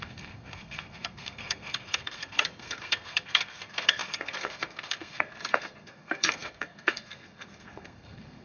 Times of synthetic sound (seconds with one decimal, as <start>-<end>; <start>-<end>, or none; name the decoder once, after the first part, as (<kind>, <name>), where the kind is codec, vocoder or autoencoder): 0.0-8.4 (codec, SNAC)